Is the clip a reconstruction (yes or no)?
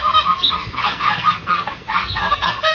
yes